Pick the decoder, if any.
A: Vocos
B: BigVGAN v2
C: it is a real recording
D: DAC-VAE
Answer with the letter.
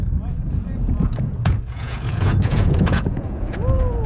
A